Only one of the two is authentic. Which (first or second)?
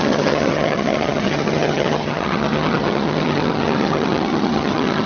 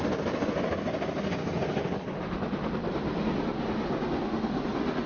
second